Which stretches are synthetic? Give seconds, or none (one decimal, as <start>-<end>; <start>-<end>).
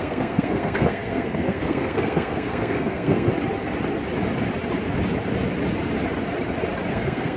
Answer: 0.0-3.3; 6.9-7.4